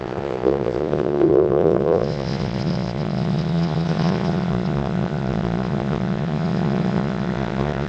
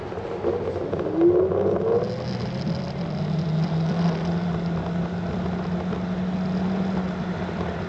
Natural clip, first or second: second